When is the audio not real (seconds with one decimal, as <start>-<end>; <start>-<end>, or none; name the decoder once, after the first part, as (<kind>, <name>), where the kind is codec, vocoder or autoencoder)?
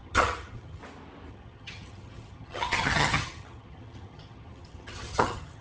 0.0-0.8 (vocoder, HiFi-GAN); 1.3-5.6